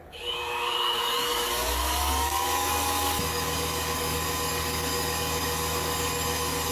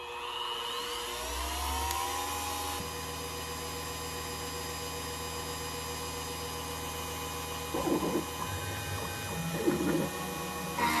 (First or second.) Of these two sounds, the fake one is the first